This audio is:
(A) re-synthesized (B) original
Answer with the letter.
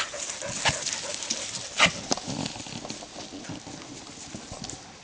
B